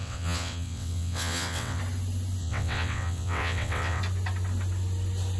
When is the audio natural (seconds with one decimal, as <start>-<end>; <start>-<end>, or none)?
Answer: 1.8-2.4; 4.0-5.4